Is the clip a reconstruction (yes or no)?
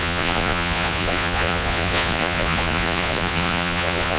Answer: yes